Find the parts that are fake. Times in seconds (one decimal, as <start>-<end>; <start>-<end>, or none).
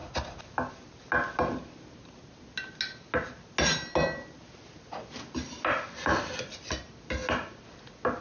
none